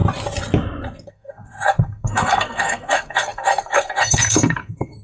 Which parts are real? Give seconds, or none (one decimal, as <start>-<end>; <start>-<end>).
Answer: 0.0-1.1